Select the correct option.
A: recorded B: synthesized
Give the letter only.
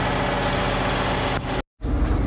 A